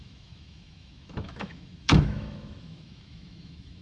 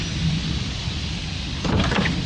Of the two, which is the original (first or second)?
second